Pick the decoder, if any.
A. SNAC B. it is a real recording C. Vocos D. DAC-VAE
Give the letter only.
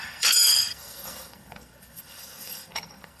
A